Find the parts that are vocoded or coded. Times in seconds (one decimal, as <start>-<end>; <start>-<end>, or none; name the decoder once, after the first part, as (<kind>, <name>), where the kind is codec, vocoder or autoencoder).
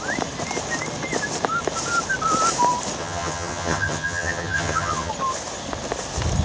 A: 3.0-5.1 (vocoder, HiFi-GAN)